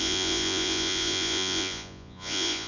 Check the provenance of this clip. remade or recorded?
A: remade